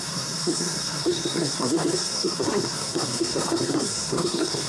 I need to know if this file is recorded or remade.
remade